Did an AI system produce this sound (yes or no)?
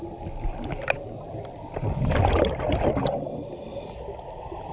no